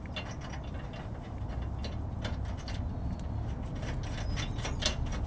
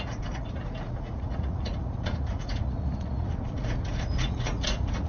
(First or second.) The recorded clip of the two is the first